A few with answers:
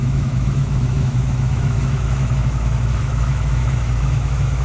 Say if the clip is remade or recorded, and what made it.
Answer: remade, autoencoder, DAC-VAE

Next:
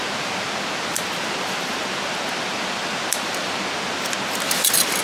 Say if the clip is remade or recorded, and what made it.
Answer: recorded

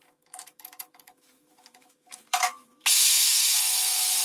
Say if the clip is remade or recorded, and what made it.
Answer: remade, autoencoder, DAC-VAE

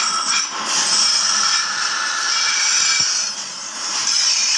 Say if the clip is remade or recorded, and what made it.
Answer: recorded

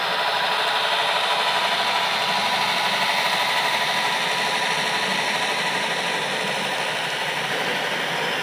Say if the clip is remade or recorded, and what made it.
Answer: recorded